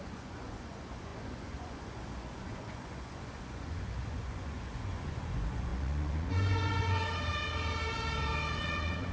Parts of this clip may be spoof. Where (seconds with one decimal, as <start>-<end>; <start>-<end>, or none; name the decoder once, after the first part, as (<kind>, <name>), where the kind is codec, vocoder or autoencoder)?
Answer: 0.0-7.0 (vocoder, Vocos); 8.6-9.1